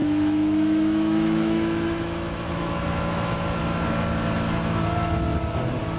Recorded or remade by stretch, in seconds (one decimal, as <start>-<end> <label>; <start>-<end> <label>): 0.0-3.6 remade; 3.6-6.0 recorded